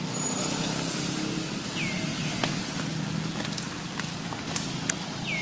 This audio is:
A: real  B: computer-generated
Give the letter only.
A